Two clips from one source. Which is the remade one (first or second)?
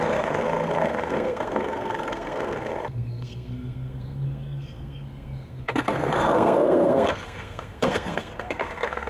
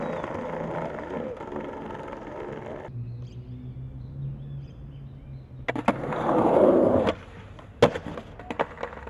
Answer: first